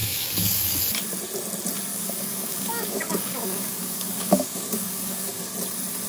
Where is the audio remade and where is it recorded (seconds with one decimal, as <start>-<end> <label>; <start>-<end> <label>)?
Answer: 0.0-0.8 remade; 0.8-1.9 recorded; 1.9-5.4 remade; 5.4-6.1 recorded

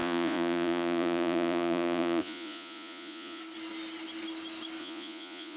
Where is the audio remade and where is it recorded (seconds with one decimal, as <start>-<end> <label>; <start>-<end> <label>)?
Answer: 0.0-3.4 remade; 3.4-4.8 recorded; 4.8-5.6 remade

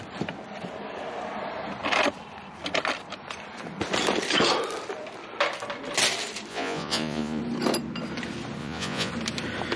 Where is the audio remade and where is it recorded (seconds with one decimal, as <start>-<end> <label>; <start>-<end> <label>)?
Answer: 0.0-6.5 recorded; 6.5-7.4 remade; 7.4-8.6 recorded; 8.6-9.1 remade; 9.1-9.8 recorded

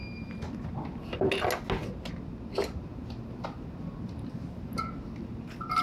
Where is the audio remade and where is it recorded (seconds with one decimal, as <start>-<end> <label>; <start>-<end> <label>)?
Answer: 0.0-5.8 recorded

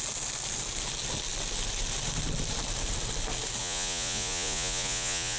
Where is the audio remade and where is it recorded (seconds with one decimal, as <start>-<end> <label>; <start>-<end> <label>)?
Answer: 0.0-3.6 recorded; 3.6-5.4 remade